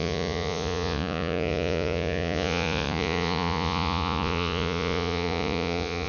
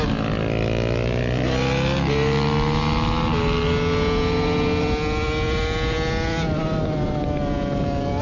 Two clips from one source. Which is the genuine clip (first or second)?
second